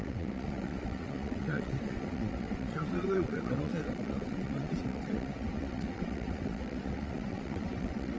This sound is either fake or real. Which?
fake